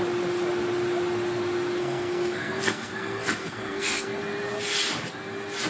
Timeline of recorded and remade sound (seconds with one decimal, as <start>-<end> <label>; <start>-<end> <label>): 0.0-1.8 recorded; 1.8-4.2 remade; 4.2-5.7 recorded